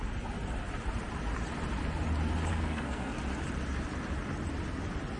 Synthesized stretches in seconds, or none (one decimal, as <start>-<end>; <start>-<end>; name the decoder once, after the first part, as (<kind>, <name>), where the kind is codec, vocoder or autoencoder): 2.5-3.2 (codec, SNAC)